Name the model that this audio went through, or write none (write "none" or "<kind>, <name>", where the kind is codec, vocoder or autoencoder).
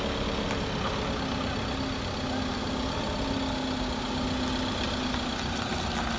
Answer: none